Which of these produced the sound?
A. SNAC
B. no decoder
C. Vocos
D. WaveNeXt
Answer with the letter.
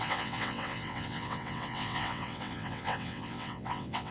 D